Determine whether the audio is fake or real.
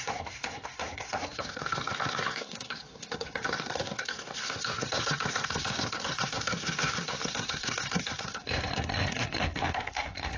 fake